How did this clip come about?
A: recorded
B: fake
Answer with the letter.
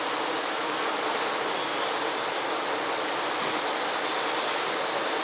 A